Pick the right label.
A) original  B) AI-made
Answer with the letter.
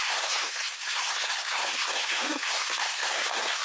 B